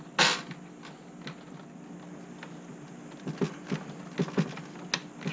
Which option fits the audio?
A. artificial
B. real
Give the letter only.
B